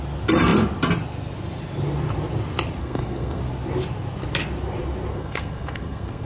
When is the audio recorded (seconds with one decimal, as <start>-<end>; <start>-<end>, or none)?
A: 0.0-2.8; 3.4-5.1